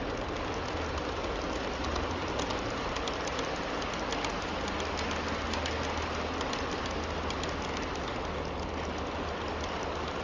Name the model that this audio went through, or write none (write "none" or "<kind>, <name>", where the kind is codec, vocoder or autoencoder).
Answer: none